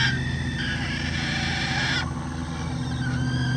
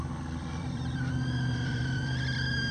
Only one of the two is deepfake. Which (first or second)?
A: second